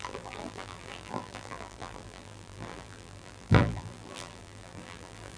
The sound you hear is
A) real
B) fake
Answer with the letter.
B